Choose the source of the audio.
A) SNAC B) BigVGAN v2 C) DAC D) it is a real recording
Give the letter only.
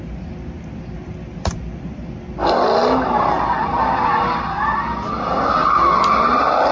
D